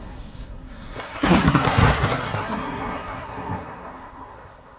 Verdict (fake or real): fake